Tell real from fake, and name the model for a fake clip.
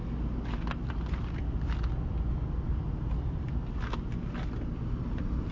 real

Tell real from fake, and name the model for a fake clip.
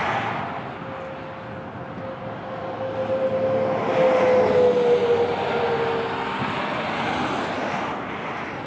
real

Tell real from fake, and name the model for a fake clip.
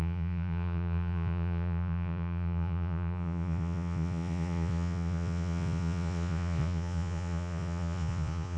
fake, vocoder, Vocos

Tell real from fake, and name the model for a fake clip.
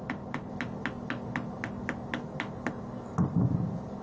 real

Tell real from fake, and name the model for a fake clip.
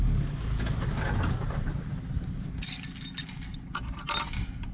real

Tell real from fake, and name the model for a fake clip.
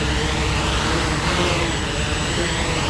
real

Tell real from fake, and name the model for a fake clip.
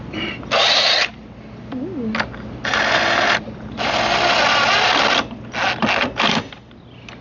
real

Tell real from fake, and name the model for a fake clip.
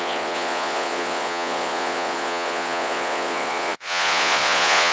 fake, vocoder, Vocos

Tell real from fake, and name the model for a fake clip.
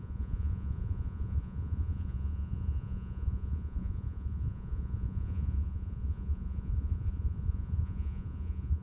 fake, vocoder, Vocos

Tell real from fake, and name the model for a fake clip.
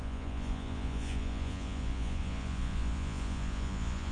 fake, vocoder, Vocos